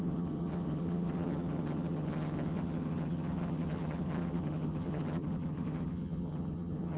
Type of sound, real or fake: fake